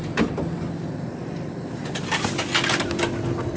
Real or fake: real